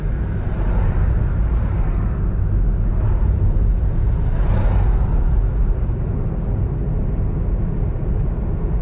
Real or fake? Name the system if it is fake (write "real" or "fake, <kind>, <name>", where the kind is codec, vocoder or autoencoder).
real